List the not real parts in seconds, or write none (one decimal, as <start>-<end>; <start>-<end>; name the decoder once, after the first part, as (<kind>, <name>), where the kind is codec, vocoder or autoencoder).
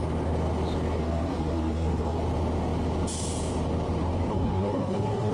1.0-2.2 (codec, SNAC); 4.3-5.3